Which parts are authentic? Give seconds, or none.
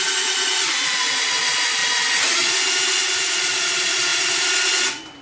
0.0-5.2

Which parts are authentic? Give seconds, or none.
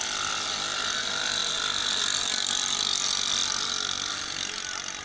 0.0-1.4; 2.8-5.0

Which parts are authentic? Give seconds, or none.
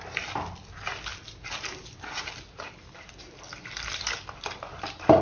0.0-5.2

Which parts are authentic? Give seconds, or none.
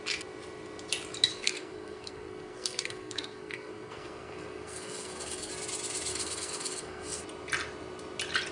0.0-1.3; 5.5-6.1; 7.2-8.5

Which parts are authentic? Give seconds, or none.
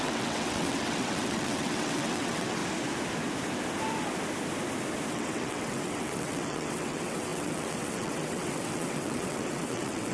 2.6-5.1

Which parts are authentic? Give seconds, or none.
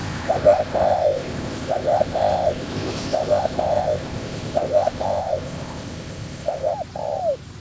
6.7-7.6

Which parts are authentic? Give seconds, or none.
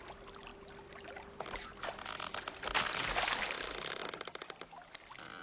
0.0-5.4